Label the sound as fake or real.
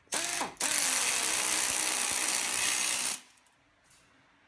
real